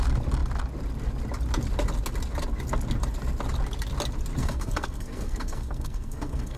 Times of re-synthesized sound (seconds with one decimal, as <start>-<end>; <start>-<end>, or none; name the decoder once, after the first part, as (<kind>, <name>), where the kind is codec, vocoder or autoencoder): 4.4-6.6 (codec, SNAC)